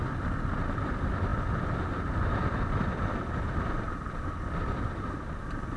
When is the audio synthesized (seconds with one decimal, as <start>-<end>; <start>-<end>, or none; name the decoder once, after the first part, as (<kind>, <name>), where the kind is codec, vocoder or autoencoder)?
none